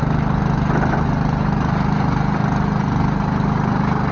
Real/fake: real